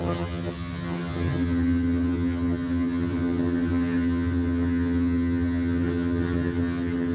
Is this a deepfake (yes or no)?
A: yes